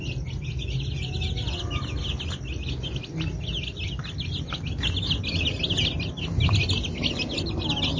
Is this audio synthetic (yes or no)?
no